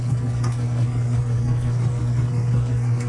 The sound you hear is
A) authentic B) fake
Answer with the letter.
B